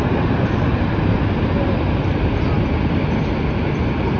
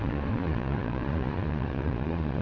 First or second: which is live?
first